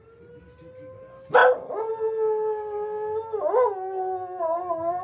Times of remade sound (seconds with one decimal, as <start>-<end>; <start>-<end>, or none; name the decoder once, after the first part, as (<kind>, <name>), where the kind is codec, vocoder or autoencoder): none